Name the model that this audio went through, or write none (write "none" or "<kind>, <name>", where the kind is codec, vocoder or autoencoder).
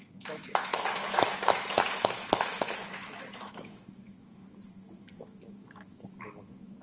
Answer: autoencoder, DAC-VAE